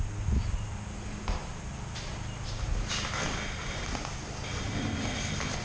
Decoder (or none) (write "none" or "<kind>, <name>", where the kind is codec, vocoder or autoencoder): none